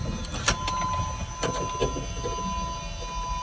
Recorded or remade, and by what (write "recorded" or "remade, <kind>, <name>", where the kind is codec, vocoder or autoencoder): recorded